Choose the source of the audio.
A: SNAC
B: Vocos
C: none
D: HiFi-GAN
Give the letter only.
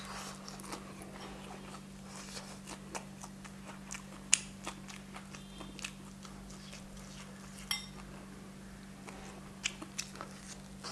C